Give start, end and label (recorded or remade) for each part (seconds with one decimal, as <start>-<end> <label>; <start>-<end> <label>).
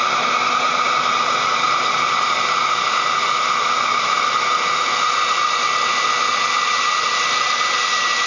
0.0-8.3 recorded